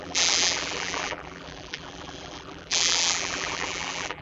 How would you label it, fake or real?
fake